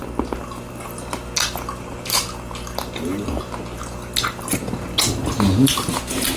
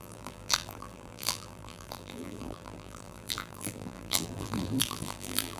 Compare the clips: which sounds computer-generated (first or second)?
second